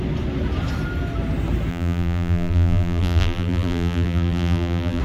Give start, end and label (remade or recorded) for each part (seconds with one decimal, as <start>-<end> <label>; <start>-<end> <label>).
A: 0.0-1.7 recorded; 1.7-5.0 remade